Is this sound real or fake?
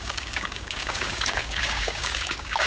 fake